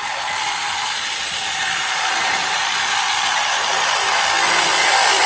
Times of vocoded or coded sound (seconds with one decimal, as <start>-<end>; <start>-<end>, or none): none